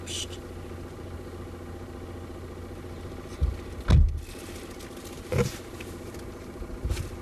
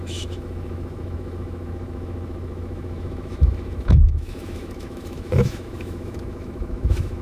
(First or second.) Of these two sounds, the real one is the first